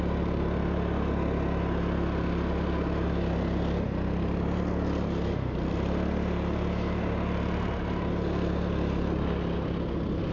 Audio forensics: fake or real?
real